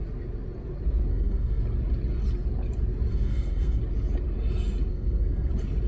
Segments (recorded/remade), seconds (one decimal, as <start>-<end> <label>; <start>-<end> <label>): 0.0-1.1 recorded; 1.1-1.6 remade; 1.6-3.1 recorded; 3.1-3.8 remade; 3.8-4.9 recorded; 4.9-5.5 remade; 5.5-5.9 recorded